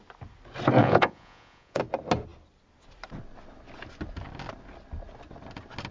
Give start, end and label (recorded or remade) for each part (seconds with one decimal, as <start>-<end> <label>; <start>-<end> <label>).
0.0-0.8 recorded; 0.8-1.8 remade; 1.8-5.9 recorded